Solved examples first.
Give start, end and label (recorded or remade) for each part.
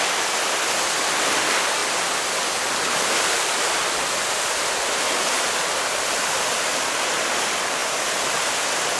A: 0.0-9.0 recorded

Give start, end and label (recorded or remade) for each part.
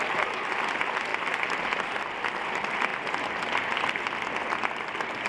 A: 0.0-5.3 recorded